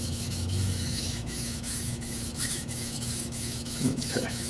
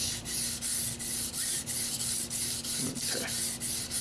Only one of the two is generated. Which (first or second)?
first